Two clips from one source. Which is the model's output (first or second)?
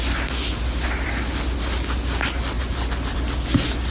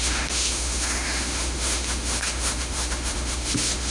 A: second